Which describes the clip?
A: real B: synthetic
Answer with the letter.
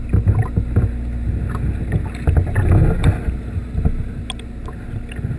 A